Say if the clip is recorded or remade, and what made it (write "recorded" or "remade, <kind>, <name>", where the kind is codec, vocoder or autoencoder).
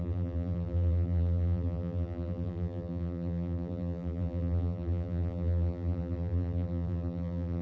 remade, vocoder, BigVGAN v2